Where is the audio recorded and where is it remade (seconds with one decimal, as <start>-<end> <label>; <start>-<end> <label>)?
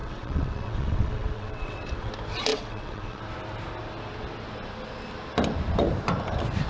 0.0-2.1 remade; 2.1-2.5 recorded; 2.5-3.2 remade; 3.2-6.7 recorded